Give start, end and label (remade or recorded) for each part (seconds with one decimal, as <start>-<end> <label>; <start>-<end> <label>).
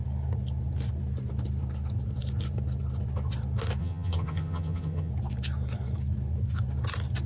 0.0-3.8 recorded; 3.8-5.1 remade; 5.1-7.3 recorded